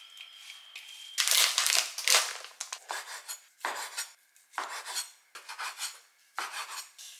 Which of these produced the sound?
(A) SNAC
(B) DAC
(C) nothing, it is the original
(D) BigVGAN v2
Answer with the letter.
C